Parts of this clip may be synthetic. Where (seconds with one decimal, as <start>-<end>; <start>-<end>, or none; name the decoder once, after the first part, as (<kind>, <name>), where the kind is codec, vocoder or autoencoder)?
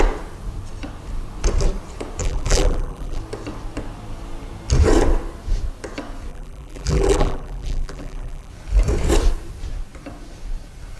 2.2-3.2 (vocoder, BigVGAN v2); 6.3-8.5